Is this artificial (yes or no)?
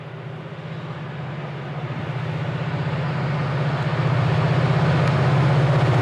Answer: no